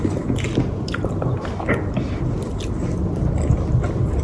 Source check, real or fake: real